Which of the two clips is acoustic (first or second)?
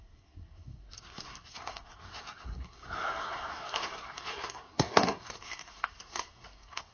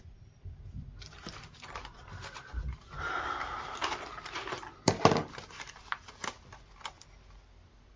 second